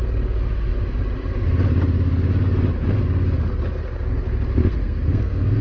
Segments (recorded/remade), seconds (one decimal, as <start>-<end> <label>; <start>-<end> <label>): 0.0-4.6 recorded; 4.6-5.6 remade